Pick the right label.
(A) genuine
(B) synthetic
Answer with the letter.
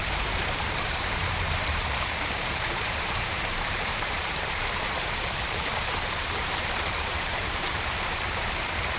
B